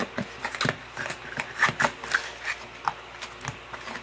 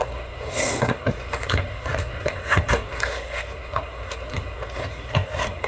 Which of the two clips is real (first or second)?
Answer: first